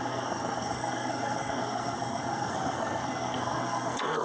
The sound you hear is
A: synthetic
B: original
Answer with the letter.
A